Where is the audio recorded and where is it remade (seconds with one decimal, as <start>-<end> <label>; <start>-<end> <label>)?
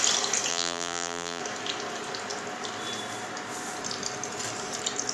0.0-0.5 recorded; 0.5-1.4 remade; 1.4-5.1 recorded